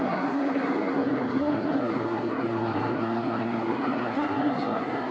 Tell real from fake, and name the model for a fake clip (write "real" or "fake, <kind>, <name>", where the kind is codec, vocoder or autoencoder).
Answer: fake, codec, SNAC